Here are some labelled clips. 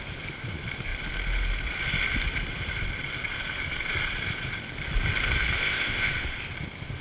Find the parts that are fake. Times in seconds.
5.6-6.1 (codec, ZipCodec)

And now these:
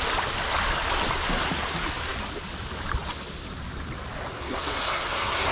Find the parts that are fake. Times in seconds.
4.3-5.5 (codec, SNAC)

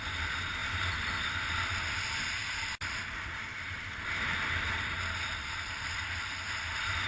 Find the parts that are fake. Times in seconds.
none

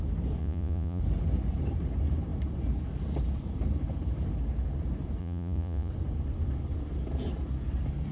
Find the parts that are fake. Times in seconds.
0.4-1.0 (vocoder, Vocos); 5.2-5.9

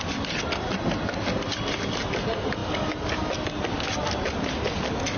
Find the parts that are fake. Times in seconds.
none

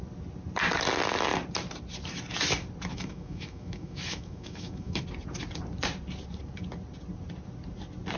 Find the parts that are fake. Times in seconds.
2.9-5.0 (autoencoder, DAC-VAE)

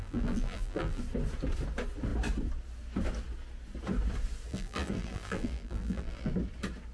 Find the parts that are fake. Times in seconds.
0.0-1.0 (vocoder, BigVGAN v2); 4.5-6.3